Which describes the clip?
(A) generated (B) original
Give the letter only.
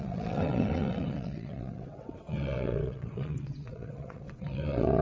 A